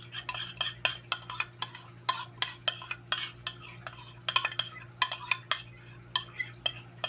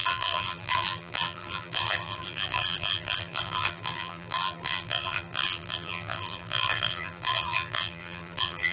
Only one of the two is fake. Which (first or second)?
second